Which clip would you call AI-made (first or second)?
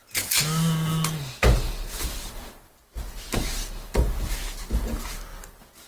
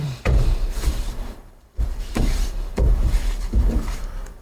second